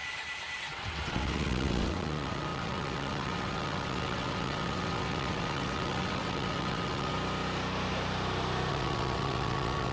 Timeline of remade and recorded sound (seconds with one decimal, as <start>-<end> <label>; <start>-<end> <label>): 0.0-0.6 recorded; 0.6-7.1 remade; 7.1-8.7 recorded; 8.7-9.9 remade